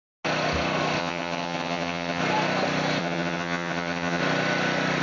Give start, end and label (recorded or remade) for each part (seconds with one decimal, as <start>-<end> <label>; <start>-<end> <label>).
0.0-1.0 recorded; 1.0-2.2 remade; 2.2-3.0 recorded; 3.0-4.2 remade; 4.2-5.0 recorded